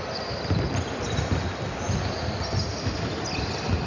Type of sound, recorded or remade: recorded